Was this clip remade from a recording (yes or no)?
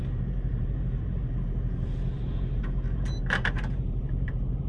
yes